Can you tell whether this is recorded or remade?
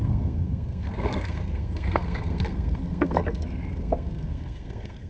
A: remade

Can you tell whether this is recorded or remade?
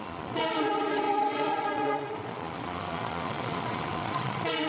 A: remade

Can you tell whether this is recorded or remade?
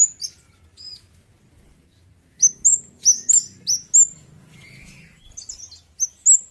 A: recorded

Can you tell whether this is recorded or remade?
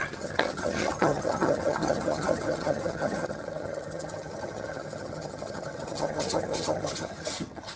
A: remade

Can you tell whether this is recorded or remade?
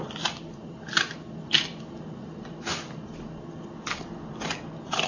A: recorded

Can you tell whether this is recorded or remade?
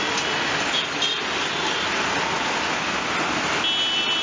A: recorded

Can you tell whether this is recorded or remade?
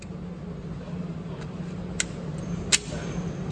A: recorded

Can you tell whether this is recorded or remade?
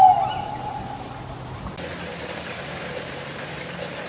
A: recorded